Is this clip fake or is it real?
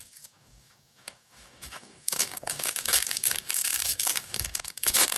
fake